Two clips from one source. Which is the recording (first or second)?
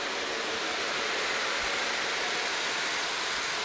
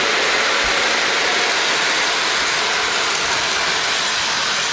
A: second